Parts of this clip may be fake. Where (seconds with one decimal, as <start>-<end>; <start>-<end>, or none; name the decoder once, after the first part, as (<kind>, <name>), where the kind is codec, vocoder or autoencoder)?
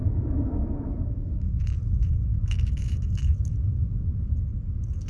0.0-1.6 (autoencoder, DAC-VAE); 2.3-3.2